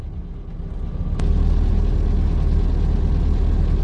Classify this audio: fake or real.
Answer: real